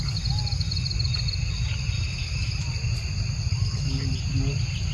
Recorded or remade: recorded